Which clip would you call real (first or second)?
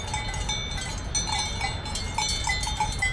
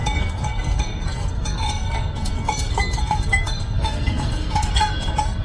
first